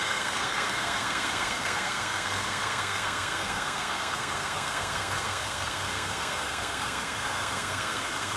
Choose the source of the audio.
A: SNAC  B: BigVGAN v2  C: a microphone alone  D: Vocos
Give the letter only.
A